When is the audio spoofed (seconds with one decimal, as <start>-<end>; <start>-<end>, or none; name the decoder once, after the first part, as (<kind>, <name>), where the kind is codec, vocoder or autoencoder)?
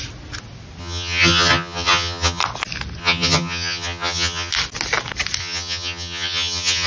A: 0.8-2.4 (vocoder, HiFi-GAN); 3.0-4.5; 5.4-6.9